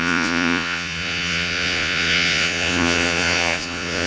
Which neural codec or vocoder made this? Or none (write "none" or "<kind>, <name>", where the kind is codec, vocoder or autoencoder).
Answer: vocoder, Vocos